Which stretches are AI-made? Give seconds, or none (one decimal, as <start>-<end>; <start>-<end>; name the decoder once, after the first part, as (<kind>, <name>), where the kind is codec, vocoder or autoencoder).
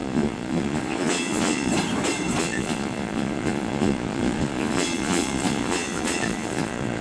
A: 0.0-1.7 (vocoder, Vocos); 2.4-7.0